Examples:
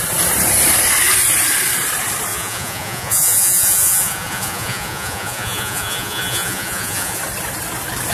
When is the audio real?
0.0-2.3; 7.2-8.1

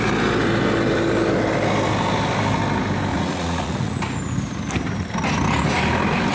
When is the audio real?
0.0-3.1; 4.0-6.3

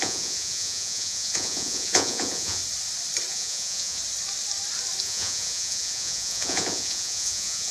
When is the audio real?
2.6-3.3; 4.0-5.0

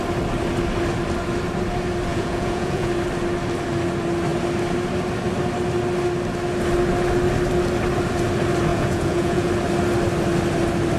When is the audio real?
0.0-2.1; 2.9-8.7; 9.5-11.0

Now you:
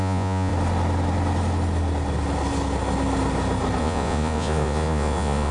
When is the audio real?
0.5-3.8

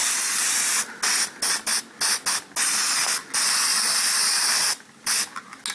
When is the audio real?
0.0-5.7

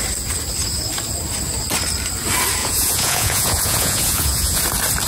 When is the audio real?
0.0-2.6; 4.6-5.1

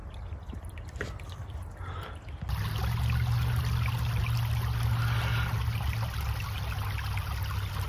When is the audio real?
0.0-7.9